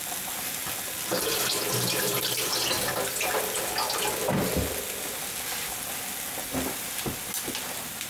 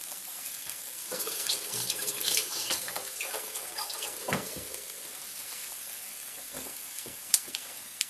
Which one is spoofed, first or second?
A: second